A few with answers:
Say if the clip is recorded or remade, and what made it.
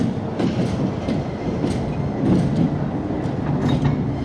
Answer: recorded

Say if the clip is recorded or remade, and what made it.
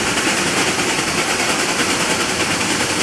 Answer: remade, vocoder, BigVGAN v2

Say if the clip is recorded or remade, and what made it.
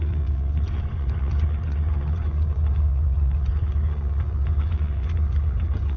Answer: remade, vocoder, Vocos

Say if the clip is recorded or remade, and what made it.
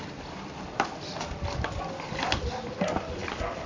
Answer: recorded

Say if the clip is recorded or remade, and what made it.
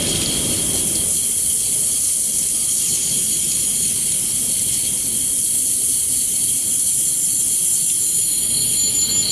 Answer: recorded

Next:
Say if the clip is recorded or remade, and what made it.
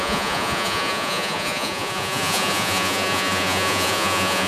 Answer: remade, vocoder, Vocos